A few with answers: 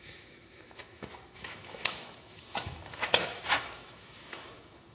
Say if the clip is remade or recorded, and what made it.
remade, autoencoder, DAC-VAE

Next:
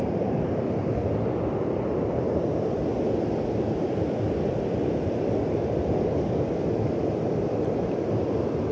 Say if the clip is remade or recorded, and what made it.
recorded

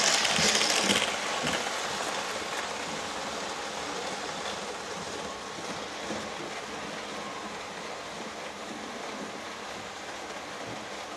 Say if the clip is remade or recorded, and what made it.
recorded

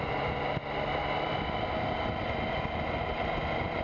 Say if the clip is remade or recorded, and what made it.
recorded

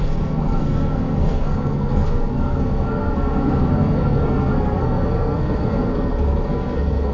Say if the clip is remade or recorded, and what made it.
remade, codec, SNAC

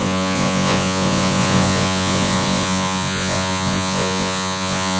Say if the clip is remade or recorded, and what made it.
remade, vocoder, Vocos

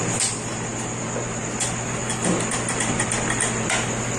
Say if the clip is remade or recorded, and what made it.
recorded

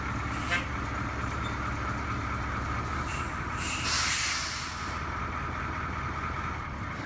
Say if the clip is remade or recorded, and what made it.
recorded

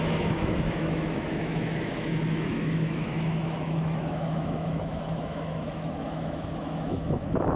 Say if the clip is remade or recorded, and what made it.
remade, autoencoder, DAC-VAE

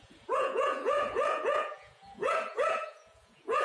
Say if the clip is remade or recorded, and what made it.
remade, vocoder, Vocos